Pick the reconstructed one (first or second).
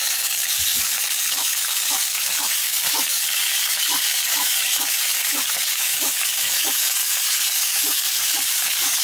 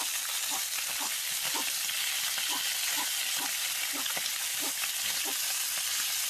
first